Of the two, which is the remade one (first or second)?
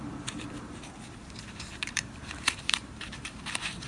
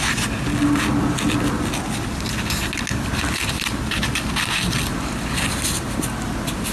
first